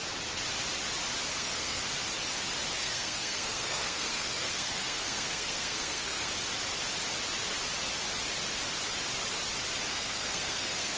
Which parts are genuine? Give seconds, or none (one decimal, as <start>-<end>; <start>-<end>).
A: 0.0-1.3; 1.8-2.8; 6.3-9.9